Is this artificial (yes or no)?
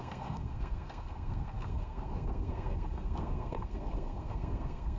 yes